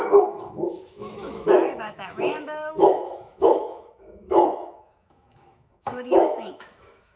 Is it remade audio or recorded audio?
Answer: remade